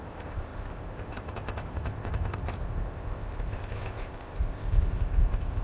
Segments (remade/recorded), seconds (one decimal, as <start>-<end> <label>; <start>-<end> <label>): 0.0-5.6 remade